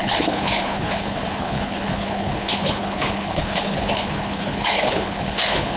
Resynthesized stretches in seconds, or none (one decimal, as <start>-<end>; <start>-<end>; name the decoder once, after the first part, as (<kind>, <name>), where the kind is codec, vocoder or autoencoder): 0.0-5.8 (codec, HILCodec)